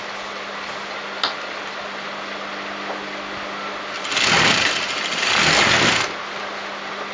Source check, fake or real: real